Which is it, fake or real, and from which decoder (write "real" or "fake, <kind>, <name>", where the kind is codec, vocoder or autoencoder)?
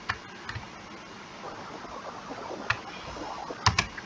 real